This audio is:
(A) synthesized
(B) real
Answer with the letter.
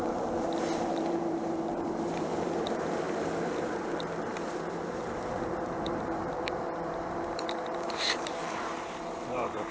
A